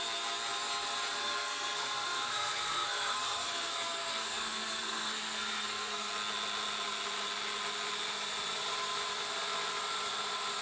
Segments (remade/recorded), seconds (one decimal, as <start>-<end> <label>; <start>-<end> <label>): 0.0-1.2 recorded; 1.2-6.1 remade; 6.1-10.6 recorded